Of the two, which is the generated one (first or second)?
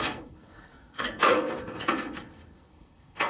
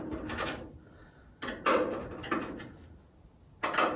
first